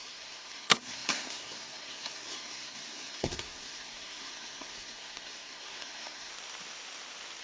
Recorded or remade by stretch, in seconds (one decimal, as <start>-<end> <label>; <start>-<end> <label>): 0.0-6.3 remade; 6.3-7.4 recorded